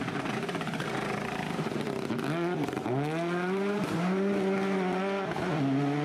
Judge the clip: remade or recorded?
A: recorded